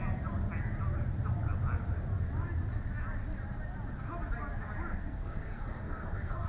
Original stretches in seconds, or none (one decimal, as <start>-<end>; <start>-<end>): 0.0-4.9